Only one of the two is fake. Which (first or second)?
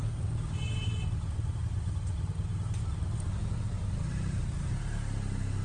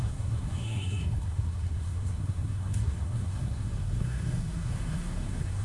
second